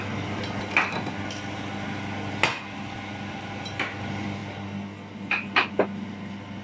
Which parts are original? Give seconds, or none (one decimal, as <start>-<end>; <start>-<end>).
0.0-6.6